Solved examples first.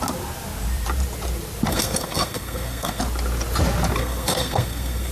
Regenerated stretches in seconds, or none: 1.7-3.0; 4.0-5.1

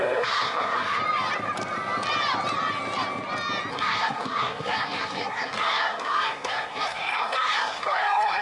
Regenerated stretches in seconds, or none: 0.0-1.0; 3.7-8.4

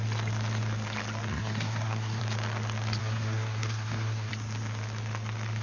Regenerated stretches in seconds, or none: 1.3-2.2; 3.0-4.3

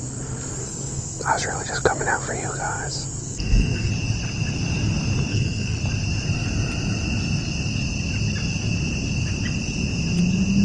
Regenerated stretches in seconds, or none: 0.6-1.2; 3.2-3.9; 5.3-5.8

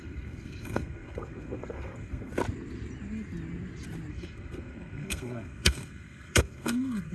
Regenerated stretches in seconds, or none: 0.0-2.3; 4.1-7.1

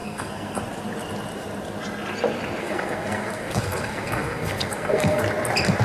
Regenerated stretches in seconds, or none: 0.0-0.6; 2.6-5.2

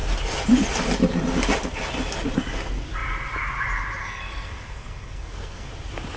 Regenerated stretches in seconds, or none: 4.0-5.7

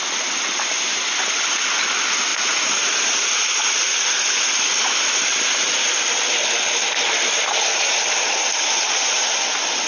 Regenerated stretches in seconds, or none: none